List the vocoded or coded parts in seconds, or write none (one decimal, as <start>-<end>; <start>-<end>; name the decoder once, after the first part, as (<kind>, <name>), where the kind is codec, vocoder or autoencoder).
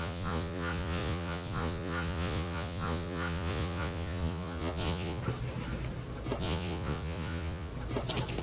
0.0-5.2 (vocoder, Vocos); 6.4-7.7